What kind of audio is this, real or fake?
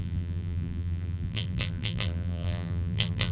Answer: fake